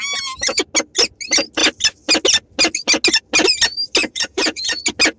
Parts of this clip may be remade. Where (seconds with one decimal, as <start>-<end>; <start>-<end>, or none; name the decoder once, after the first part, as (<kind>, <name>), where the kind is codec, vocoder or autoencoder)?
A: 4.0-4.8 (vocoder, Vocos)

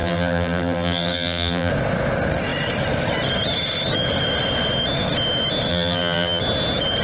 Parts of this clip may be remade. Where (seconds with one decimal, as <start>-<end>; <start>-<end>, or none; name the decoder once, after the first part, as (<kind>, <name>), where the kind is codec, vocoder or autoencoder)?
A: 0.0-1.7 (vocoder, BigVGAN v2); 5.7-6.4

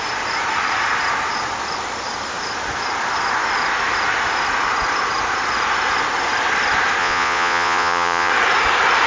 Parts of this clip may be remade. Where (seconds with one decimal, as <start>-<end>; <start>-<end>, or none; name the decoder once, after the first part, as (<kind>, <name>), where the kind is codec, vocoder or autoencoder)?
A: 7.0-8.3 (vocoder, Vocos)

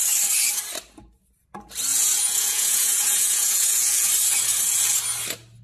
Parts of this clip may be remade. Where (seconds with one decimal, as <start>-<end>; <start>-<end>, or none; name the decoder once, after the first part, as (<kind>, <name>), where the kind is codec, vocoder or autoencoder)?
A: 1.9-4.1 (vocoder, Vocos)

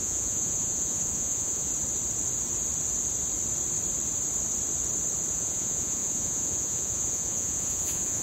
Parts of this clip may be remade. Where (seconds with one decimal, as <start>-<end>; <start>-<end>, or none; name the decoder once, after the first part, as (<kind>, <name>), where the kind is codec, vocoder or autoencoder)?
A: 0.0-1.7 (vocoder, Vocos); 5.3-8.2

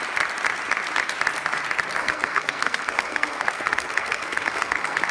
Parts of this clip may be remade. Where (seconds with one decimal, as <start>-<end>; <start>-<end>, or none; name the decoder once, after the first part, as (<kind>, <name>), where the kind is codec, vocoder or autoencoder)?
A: 2.0-5.1 (codec, SNAC)